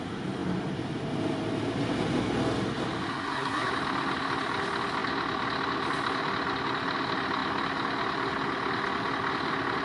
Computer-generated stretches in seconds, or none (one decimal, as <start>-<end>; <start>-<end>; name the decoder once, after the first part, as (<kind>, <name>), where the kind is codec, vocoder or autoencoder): 3.1-3.7 (codec, SNAC)